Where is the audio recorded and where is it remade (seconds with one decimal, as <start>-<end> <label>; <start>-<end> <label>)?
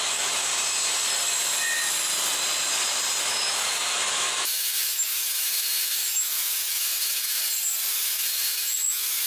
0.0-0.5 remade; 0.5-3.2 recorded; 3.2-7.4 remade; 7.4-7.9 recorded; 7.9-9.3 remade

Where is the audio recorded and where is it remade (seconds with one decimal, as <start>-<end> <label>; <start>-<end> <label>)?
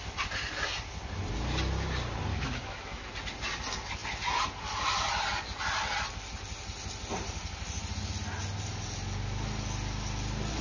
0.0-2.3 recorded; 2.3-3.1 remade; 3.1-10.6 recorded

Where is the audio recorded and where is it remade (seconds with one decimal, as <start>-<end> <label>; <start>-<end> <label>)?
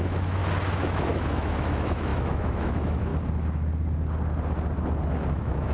0.0-0.4 remade; 0.4-0.9 recorded; 0.9-3.1 remade; 3.1-5.3 recorded; 5.3-5.7 remade